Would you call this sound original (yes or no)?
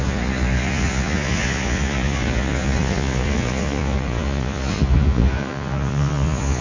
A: no